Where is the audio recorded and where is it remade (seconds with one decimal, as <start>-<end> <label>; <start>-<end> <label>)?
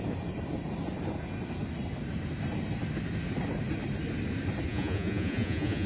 0.0-4.7 recorded; 4.7-5.9 remade